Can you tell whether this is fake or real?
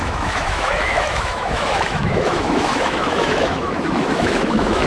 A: fake